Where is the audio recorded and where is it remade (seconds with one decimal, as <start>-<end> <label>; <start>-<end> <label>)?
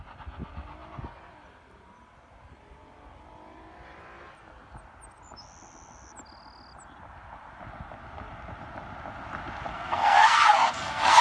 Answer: 0.0-9.7 recorded; 9.7-11.2 remade